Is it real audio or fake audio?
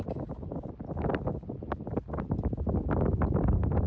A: real